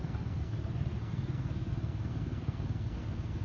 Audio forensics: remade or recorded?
remade